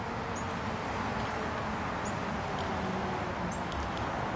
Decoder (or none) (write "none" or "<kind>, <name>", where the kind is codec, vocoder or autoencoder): none